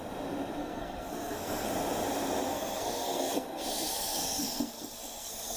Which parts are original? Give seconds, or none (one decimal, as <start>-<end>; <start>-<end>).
0.0-0.6; 1.7-2.5